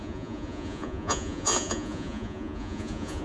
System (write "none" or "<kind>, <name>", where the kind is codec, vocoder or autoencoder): vocoder, Vocos